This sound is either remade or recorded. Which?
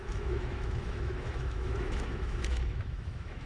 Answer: remade